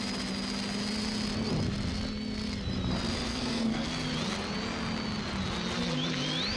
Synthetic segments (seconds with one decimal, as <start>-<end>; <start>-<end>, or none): 3.3-3.9